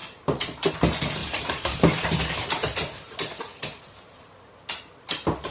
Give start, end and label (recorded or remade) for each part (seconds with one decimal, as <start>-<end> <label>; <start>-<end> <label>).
0.0-0.7 remade; 0.7-1.2 recorded; 1.2-4.5 remade; 4.5-5.5 recorded